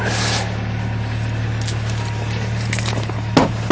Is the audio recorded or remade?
recorded